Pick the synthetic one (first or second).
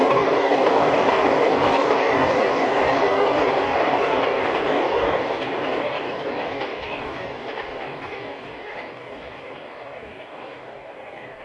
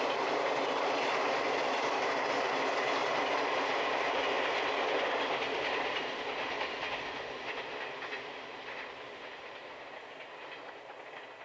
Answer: first